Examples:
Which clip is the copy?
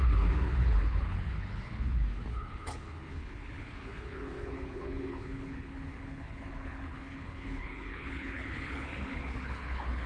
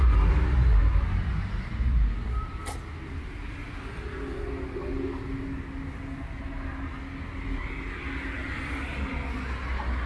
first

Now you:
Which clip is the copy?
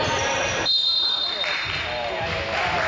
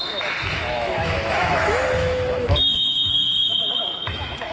second